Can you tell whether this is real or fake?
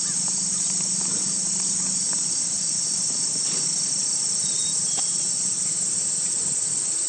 real